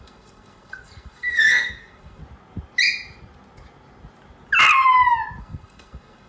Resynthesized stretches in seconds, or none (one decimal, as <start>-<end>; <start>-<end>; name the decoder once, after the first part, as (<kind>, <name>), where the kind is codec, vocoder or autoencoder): 0.0-2.2 (codec, SNAC); 5.4-6.3